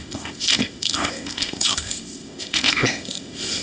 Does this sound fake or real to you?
fake